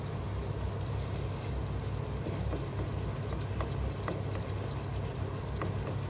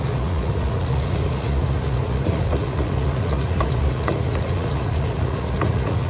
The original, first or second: first